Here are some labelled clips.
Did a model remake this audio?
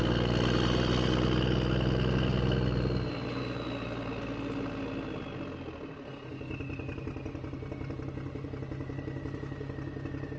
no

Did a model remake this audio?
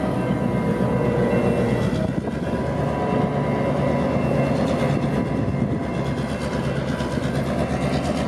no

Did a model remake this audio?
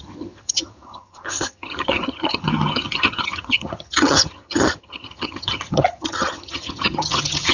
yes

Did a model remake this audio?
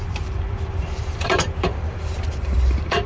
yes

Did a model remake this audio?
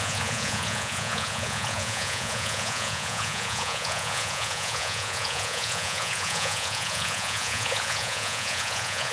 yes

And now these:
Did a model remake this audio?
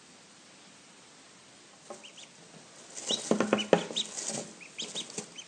no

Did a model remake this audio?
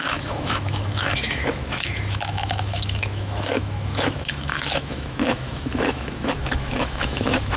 yes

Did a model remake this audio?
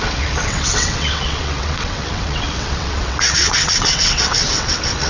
yes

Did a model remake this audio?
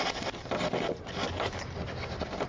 no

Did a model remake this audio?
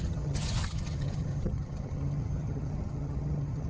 yes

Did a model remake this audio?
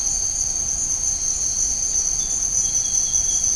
no